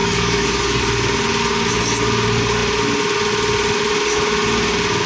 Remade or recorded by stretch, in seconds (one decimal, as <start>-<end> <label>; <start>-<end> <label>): 0.0-0.8 remade; 0.8-5.1 recorded